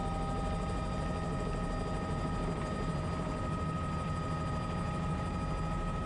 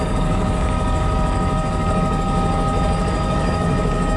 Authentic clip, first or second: first